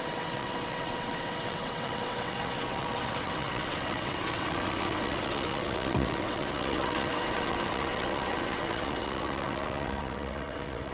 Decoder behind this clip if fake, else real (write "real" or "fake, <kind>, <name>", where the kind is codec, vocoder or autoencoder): fake, vocoder, WaveNeXt